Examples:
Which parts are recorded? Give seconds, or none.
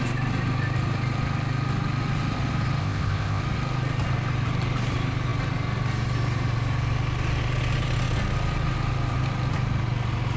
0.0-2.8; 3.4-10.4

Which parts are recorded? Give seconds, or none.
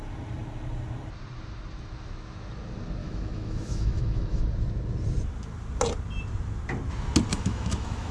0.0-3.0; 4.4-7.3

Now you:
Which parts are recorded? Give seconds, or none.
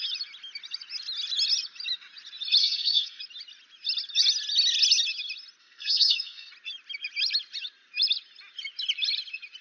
0.0-2.6; 3.2-5.6; 6.5-9.6